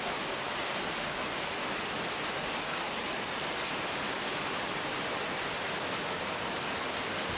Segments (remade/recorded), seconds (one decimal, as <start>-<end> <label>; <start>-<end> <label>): 0.0-3.0 recorded; 3.0-5.1 remade; 5.1-7.4 recorded